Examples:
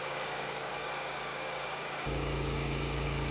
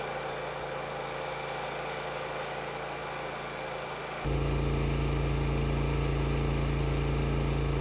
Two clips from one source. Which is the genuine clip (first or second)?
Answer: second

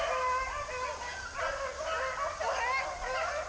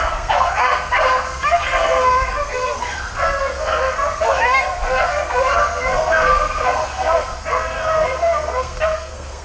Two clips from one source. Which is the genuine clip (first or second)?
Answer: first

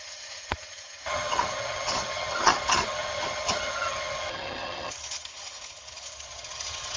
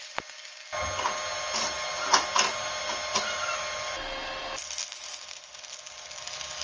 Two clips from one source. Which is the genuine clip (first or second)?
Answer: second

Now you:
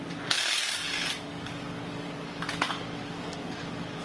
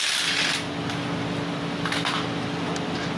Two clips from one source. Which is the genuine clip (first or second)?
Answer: second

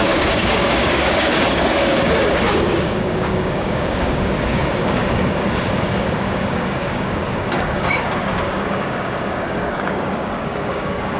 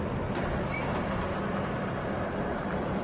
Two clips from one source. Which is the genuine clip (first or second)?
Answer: second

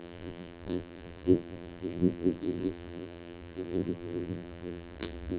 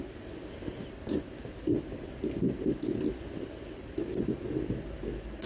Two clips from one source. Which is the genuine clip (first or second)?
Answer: second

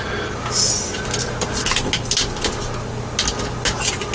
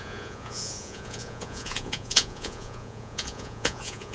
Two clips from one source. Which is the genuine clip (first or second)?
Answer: first